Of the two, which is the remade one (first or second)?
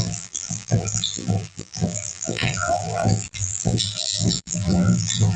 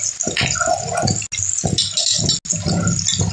first